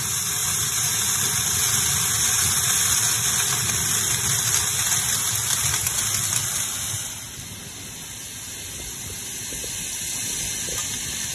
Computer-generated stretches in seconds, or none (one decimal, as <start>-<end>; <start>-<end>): 0.4-1.0